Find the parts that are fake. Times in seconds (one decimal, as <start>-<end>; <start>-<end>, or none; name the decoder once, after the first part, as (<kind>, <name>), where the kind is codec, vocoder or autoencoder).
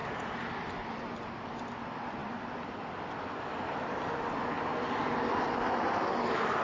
none